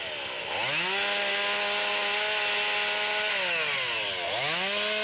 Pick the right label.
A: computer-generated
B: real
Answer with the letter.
B